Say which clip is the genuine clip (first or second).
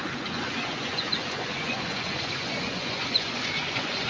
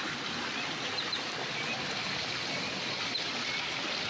second